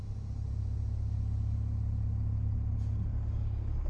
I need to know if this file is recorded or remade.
recorded